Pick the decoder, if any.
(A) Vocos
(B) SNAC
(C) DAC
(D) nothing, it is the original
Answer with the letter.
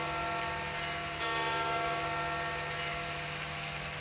D